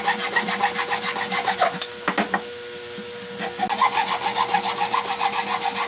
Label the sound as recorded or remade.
recorded